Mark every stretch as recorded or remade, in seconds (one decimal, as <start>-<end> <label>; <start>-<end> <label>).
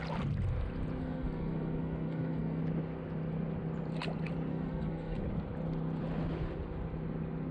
0.0-1.0 recorded; 1.0-2.6 remade; 2.6-4.5 recorded; 4.5-5.2 remade; 5.2-7.5 recorded